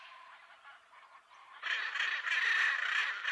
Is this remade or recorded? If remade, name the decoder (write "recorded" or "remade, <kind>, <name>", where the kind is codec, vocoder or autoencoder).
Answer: recorded